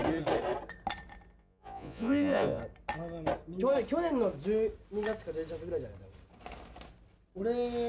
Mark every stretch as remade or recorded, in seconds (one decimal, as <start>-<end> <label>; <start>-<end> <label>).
0.0-1.4 recorded; 1.4-2.6 remade; 2.6-7.9 recorded